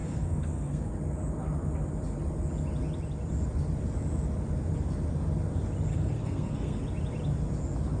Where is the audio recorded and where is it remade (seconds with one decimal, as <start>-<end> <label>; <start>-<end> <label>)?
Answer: 0.0-0.9 remade; 0.9-5.9 recorded; 5.9-6.8 remade; 6.8-8.0 recorded

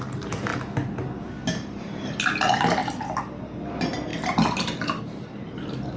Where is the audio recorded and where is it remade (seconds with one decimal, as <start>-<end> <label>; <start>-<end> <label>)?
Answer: 0.0-0.5 recorded; 0.5-2.2 remade; 2.2-2.8 recorded; 2.8-3.4 remade; 3.4-4.1 recorded; 4.1-5.0 remade; 5.0-6.0 recorded

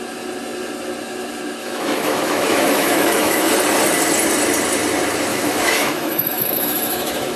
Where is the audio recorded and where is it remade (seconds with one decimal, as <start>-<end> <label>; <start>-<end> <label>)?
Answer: 0.0-1.6 recorded; 1.6-3.5 remade; 3.5-5.3 recorded; 5.3-7.4 remade

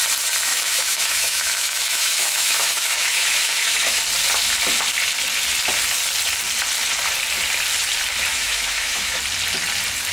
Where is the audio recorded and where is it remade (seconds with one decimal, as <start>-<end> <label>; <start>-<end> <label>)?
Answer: 0.0-0.5 recorded; 0.5-4.0 remade; 4.0-8.3 recorded; 8.3-9.2 remade; 9.2-10.1 recorded

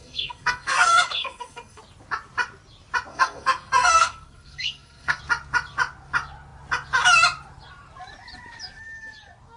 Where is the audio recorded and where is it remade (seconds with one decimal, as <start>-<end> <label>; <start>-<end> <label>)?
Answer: 0.0-1.8 remade; 1.8-3.1 recorded; 3.1-5.2 remade; 5.2-9.6 recorded